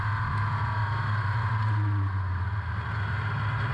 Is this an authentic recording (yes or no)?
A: yes